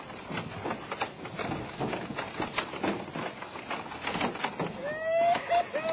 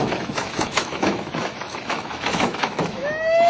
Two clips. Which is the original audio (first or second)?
first